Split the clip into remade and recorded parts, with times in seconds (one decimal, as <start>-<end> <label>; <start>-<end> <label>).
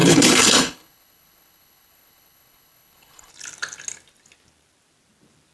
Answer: 0.0-3.3 remade; 3.3-5.5 recorded